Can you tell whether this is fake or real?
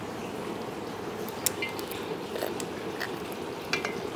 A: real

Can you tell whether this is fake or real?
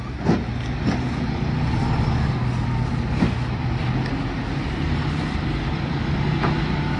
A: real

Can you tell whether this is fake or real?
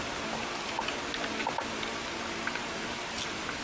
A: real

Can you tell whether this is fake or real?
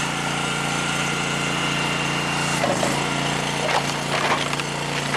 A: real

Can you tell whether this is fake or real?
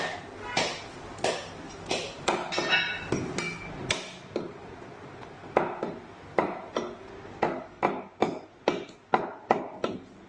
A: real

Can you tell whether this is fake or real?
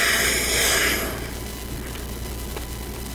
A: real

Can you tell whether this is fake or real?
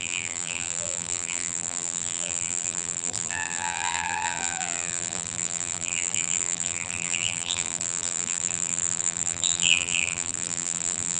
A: fake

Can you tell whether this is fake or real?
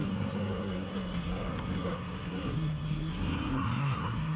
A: fake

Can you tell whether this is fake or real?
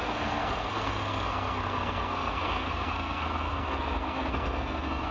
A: fake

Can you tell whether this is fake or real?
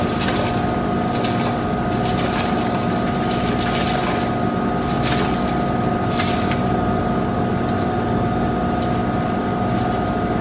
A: real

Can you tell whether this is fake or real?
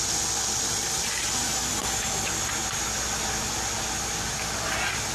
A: real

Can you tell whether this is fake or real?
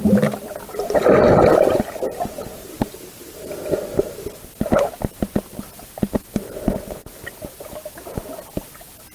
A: real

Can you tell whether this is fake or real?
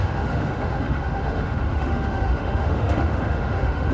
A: fake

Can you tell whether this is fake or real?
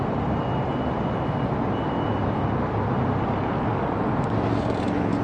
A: real